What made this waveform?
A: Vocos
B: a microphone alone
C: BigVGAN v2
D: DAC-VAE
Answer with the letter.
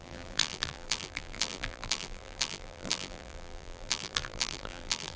C